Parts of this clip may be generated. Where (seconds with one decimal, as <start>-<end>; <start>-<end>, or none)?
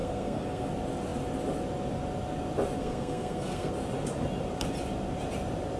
0.0-0.7; 2.8-3.7